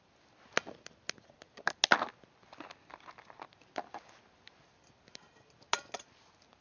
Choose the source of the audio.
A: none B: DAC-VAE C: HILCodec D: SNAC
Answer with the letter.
A